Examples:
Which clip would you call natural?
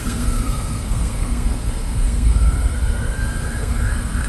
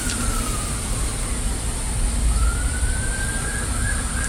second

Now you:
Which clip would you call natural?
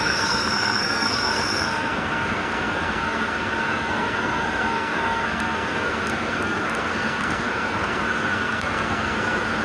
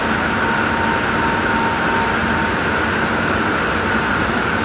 second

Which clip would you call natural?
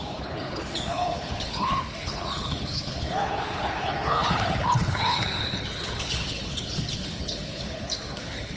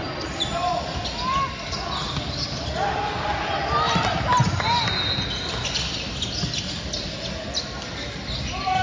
second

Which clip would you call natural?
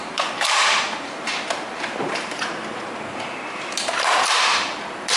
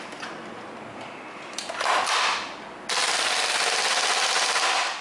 second